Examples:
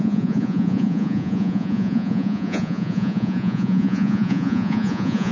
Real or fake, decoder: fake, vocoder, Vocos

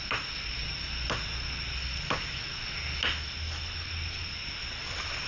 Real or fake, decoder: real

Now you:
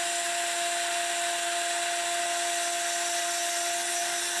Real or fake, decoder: real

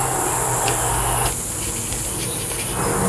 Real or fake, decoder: real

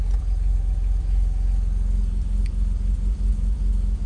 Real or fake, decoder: real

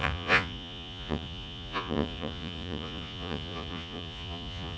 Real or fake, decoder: fake, vocoder, Vocos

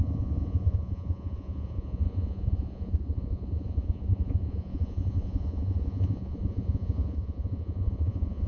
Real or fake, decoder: fake, vocoder, Vocos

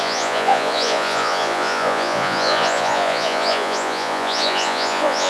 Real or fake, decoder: fake, vocoder, Vocos